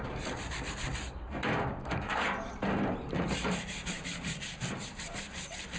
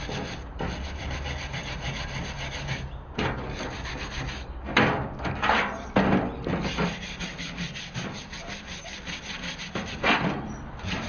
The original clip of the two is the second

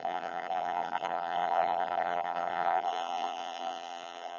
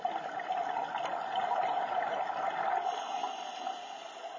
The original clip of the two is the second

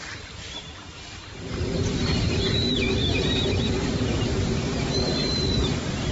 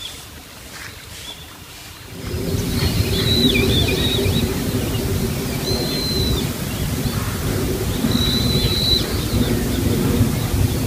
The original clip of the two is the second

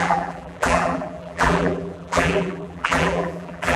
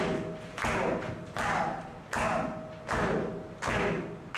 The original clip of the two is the second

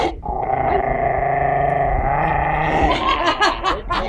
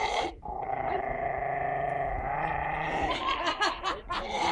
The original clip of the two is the first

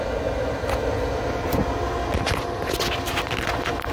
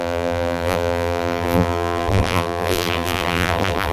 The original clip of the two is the first